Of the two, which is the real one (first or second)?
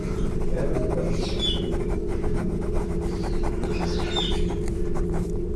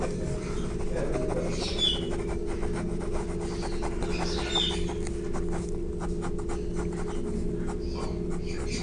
second